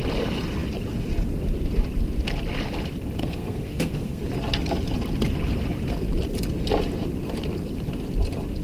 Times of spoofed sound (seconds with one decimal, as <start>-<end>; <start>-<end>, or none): 3.2-4.2